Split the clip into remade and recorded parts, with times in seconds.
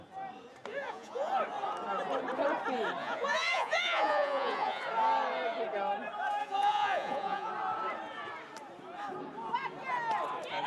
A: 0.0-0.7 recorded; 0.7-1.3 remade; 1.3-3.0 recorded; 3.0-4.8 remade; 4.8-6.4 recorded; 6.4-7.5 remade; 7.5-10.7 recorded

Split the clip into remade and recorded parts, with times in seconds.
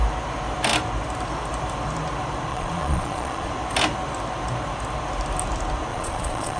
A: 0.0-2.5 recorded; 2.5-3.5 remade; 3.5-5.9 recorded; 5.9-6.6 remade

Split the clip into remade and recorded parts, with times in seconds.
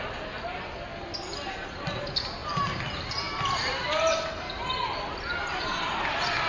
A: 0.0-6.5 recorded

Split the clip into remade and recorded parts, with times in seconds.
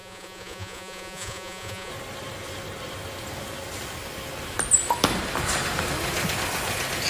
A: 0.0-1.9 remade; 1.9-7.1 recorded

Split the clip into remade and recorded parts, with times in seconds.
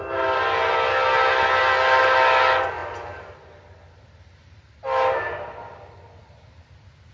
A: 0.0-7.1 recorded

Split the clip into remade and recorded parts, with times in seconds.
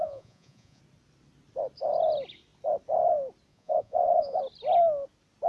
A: 0.0-0.8 remade; 0.8-3.5 recorded; 3.5-4.4 remade; 4.4-5.5 recorded